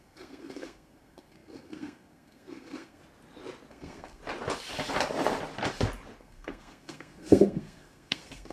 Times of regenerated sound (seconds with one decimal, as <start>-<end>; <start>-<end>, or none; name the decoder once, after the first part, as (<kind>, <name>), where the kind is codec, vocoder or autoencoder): 0.0-3.0 (codec, SNAC); 3.7-4.2; 6.2-8.5